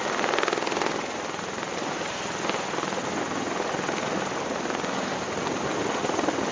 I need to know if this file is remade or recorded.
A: recorded